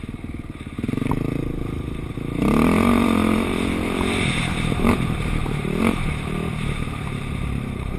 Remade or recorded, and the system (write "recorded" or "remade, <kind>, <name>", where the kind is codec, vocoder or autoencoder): remade, vocoder, BigVGAN v2